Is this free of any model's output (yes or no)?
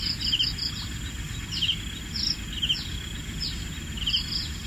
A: yes